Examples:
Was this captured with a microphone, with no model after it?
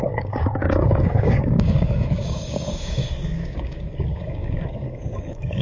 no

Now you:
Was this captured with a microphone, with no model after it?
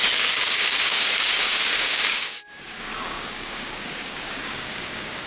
no